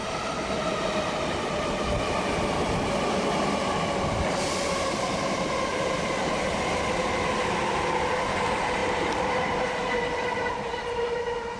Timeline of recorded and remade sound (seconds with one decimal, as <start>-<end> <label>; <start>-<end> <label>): 0.0-11.6 recorded